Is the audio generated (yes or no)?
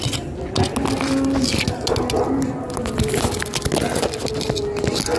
no